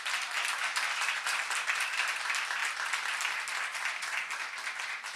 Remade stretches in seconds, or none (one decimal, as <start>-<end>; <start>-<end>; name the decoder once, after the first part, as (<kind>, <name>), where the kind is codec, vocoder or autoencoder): 0.0-0.7 (vocoder, BigVGAN v2); 1.8-2.6; 4.8-5.2